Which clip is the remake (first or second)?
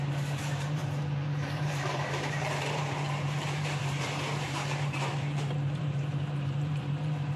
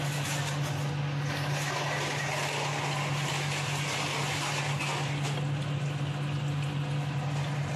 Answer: first